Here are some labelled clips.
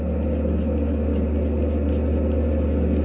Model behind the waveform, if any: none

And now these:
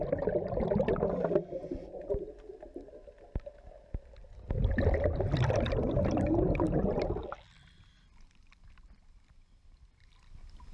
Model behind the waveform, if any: none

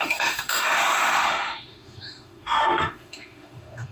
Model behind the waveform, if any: autoencoder, DAC-VAE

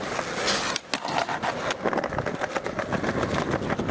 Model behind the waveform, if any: none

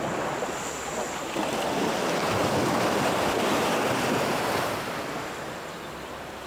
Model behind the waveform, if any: none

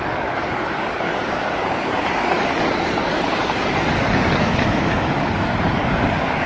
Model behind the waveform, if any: codec, DAC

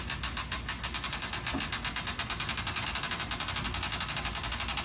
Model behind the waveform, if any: none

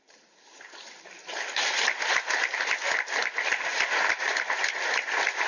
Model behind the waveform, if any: none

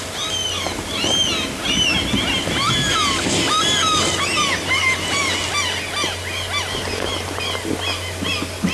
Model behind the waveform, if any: none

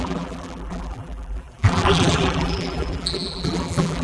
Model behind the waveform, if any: vocoder, BigVGAN v2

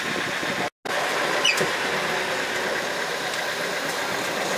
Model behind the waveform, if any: none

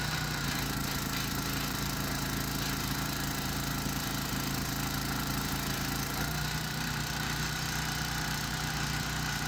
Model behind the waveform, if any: vocoder, BigVGAN v2